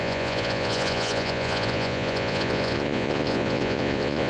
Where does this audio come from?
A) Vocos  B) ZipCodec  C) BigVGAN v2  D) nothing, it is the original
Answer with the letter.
A